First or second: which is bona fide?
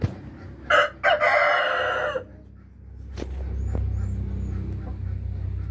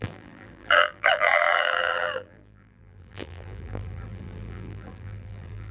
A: first